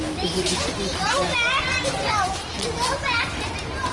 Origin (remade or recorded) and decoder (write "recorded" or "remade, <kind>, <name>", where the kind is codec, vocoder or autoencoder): recorded